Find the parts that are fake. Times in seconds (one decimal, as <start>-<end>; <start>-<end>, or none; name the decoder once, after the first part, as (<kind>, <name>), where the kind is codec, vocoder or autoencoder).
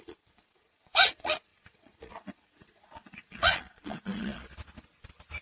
0.0-4.5 (vocoder, Vocos)